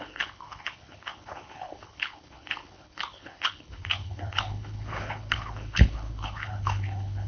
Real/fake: fake